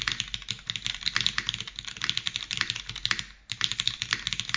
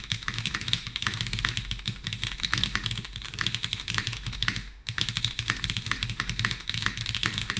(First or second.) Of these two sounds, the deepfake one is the second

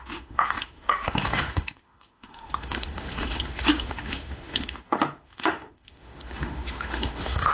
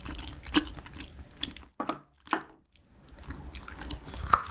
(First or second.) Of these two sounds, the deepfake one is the first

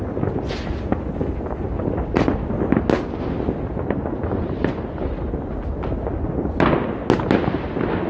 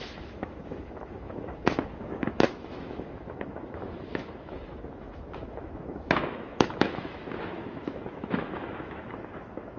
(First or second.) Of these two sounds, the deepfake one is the second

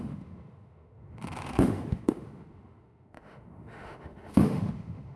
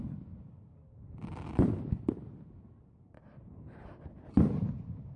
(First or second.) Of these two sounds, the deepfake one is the first